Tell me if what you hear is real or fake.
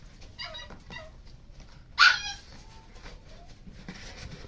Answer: real